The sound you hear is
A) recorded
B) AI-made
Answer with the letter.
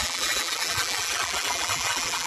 B